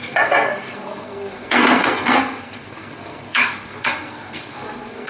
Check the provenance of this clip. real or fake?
fake